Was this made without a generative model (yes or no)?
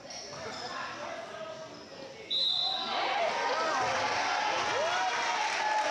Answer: yes